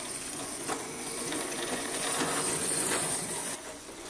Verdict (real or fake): fake